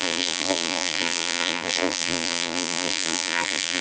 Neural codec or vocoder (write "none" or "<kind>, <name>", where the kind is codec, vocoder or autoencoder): vocoder, BigVGAN v2